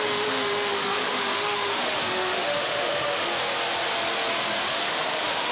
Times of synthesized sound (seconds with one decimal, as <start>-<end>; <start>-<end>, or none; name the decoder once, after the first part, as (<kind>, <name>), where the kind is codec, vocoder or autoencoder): 0.0-3.3 (autoencoder, DAC-VAE); 4.7-5.5